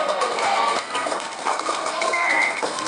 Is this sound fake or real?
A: fake